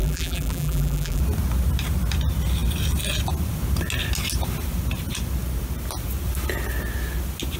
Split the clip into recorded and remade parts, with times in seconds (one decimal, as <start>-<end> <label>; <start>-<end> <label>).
0.0-1.2 remade; 1.2-7.6 recorded